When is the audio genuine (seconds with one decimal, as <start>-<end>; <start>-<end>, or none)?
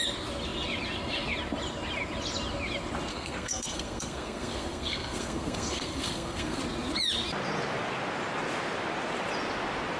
0.0-3.1; 6.6-10.0